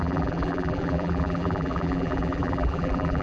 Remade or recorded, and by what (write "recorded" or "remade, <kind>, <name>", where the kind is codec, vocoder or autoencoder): remade, vocoder, BigVGAN v2